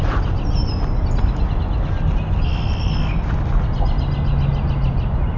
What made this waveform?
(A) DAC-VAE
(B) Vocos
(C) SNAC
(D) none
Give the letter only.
D